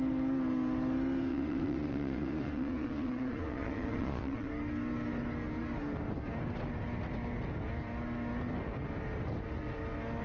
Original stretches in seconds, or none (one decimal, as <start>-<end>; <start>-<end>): 0.0-1.3; 4.5-10.2